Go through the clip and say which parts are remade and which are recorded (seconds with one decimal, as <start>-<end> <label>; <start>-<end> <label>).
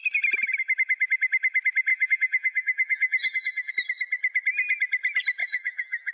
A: 0.0-1.9 recorded; 1.9-3.7 remade; 3.7-5.4 recorded; 5.4-6.1 remade